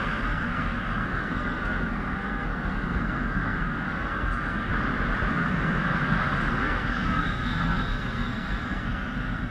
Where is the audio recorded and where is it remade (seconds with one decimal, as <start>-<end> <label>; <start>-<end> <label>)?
0.0-4.7 remade; 4.7-5.3 recorded; 5.3-9.5 remade